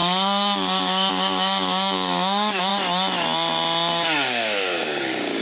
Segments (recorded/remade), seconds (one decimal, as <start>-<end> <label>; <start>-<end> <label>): 0.0-2.7 remade; 2.7-3.9 recorded; 3.9-5.4 remade